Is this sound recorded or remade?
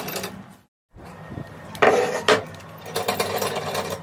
recorded